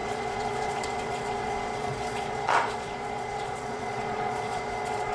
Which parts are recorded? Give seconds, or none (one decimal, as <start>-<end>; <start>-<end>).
none